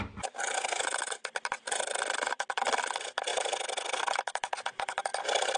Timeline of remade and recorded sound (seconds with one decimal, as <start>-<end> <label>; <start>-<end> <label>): 0.0-5.6 recorded